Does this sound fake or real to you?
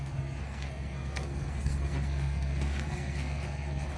fake